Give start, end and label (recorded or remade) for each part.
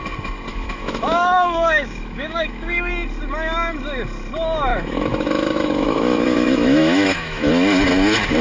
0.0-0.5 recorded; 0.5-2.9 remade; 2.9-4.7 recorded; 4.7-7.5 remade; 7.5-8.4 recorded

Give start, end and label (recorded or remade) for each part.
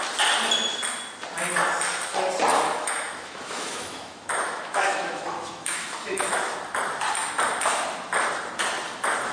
0.0-2.5 recorded; 2.5-6.4 remade; 6.4-9.3 recorded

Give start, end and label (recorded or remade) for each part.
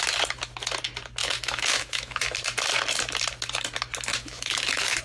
0.0-1.2 recorded; 1.2-2.2 remade; 2.2-4.1 recorded; 4.1-5.0 remade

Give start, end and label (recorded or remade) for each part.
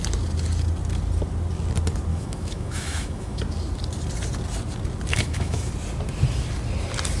0.0-2.1 recorded; 2.1-3.4 remade; 3.4-5.1 recorded; 5.1-5.7 remade; 5.7-7.2 recorded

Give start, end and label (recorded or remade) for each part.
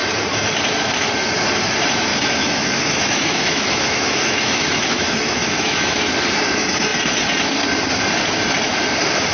0.0-2.1 recorded; 2.1-6.0 remade; 6.0-9.3 recorded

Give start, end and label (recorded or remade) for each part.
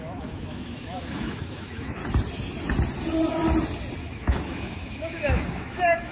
0.0-2.0 remade; 2.0-4.0 recorded; 4.0-6.1 remade